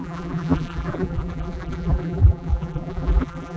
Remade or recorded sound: remade